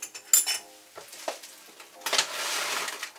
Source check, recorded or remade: recorded